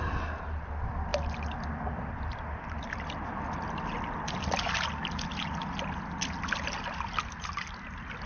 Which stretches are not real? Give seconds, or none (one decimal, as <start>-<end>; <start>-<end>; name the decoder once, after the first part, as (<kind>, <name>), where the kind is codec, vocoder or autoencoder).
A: none